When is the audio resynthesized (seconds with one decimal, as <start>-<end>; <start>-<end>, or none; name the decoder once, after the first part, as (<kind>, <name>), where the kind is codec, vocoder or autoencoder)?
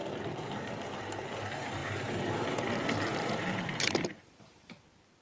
1.0-5.2 (vocoder, BigVGAN v2)